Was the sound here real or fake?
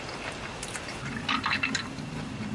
fake